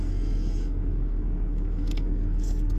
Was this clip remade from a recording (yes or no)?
yes